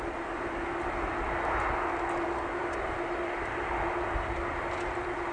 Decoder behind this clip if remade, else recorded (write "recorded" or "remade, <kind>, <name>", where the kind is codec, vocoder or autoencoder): recorded